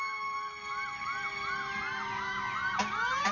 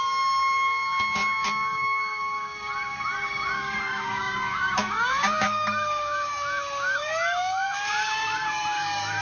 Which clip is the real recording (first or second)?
first